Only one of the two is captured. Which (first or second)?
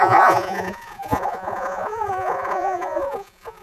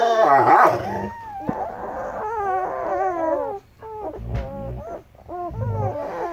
second